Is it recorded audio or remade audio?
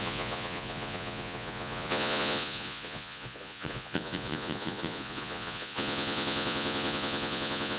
remade